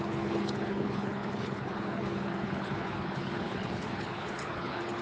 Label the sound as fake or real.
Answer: fake